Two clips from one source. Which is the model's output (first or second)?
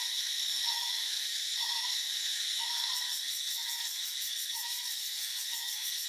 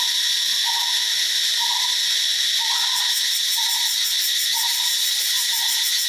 first